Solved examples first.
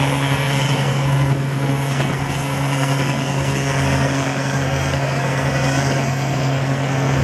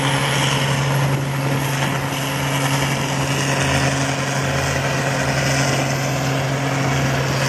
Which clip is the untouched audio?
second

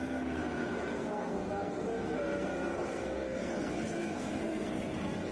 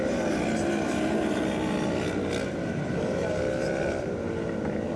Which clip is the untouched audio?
second